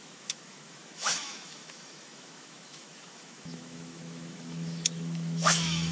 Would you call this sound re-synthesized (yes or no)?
yes